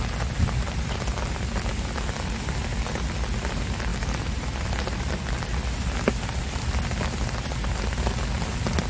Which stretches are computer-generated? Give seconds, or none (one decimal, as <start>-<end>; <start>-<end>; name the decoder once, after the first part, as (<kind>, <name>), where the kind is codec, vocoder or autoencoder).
none